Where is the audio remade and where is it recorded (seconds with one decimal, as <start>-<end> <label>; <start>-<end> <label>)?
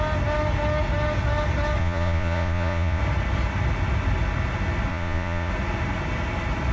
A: 0.0-1.8 recorded; 1.8-3.0 remade; 3.0-4.9 recorded; 4.9-5.5 remade; 5.5-6.7 recorded